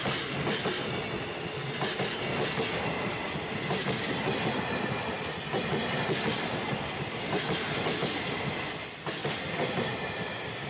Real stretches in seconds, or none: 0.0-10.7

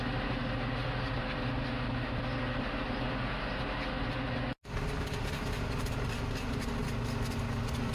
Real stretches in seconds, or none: 0.0-7.9